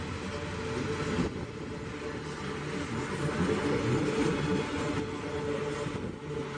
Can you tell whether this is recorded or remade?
recorded